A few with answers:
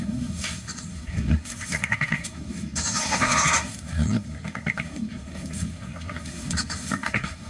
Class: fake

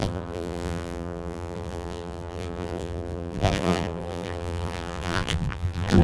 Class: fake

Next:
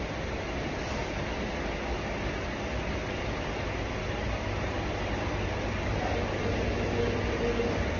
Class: real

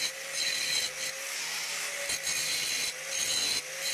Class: real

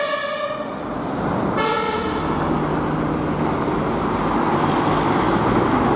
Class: real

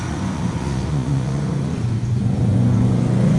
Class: fake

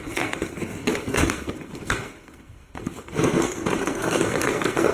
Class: fake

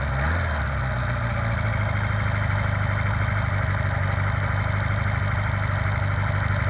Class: real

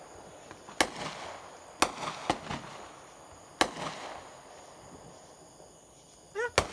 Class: real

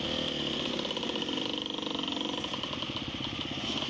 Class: real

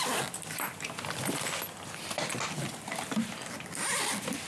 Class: real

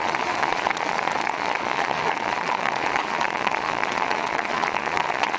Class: fake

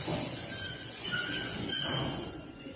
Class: fake